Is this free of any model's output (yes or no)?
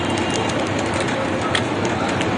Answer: yes